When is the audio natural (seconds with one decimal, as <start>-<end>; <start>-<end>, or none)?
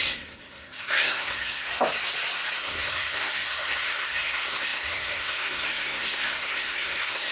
1.7-2.6